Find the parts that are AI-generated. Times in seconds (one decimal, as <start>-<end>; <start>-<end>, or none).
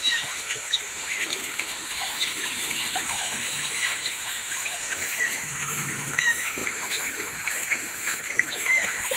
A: 0.0-9.2